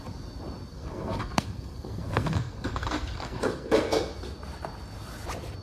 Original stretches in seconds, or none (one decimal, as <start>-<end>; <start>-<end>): 0.0-0.7; 4.1-5.6